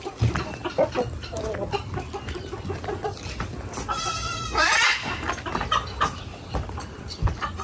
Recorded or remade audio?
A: remade